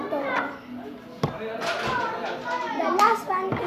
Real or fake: real